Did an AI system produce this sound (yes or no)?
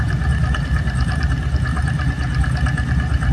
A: no